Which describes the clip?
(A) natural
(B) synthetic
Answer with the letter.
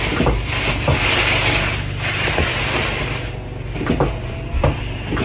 A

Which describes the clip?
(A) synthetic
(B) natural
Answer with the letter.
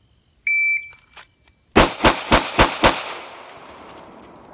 B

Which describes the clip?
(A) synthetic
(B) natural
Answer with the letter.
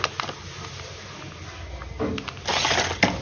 B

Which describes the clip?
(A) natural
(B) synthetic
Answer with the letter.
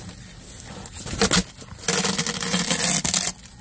A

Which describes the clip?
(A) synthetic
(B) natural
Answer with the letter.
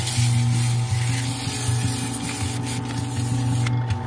B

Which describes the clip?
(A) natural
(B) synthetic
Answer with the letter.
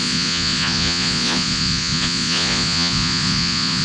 B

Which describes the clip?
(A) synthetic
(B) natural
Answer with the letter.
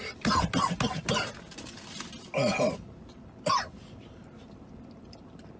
B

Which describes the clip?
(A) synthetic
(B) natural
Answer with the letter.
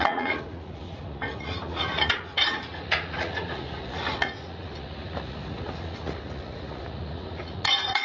A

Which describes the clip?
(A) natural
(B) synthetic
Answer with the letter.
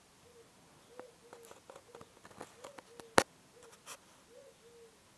A